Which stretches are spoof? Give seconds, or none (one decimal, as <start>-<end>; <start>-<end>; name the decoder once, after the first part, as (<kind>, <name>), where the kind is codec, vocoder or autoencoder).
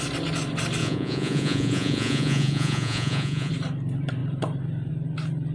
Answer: 0.8-3.5 (vocoder, Vocos)